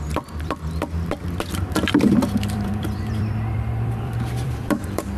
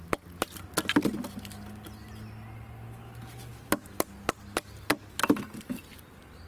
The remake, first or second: first